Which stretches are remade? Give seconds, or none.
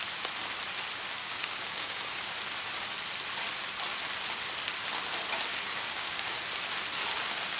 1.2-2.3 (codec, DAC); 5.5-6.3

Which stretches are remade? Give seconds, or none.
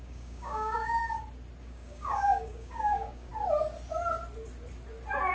0.0-1.0 (codec, DAC); 1.6-3.3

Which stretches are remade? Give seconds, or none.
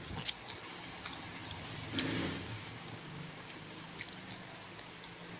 2.2-4.0 (codec, DAC)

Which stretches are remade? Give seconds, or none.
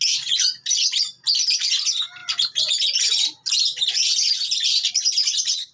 none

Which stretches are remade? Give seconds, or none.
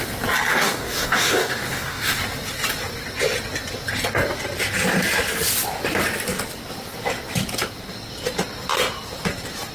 0.5-2.2 (codec, DAC)